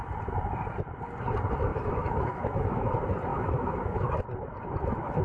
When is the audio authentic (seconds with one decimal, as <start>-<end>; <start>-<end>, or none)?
0.0-1.7; 2.9-3.3; 4.2-5.2

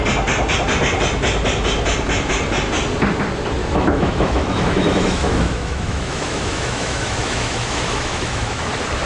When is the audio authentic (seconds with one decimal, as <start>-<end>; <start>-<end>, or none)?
0.0-3.6; 8.7-9.1

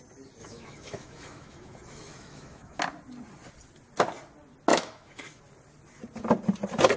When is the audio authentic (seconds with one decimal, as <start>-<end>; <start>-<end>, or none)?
0.0-0.4; 2.8-4.7; 5.4-7.0

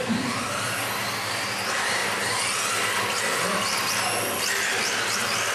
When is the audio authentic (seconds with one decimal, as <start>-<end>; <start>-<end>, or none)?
0.0-5.5

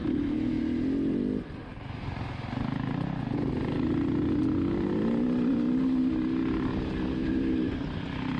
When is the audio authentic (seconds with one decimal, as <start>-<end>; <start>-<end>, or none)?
0.6-8.4

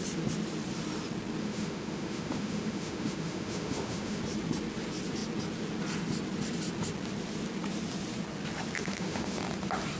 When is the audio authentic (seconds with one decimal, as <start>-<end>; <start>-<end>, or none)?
0.0-1.4; 4.2-8.8; 9.4-10.0

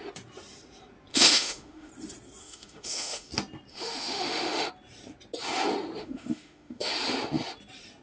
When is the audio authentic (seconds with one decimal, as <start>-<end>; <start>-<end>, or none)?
0.0-1.1; 1.9-2.4; 3.3-3.7; 4.7-6.0; 6.9-8.0

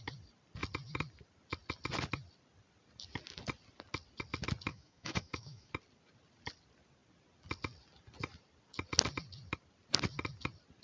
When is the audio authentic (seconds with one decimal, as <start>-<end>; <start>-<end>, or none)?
0.0-4.7; 5.7-10.8